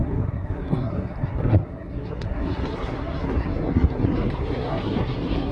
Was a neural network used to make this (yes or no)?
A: yes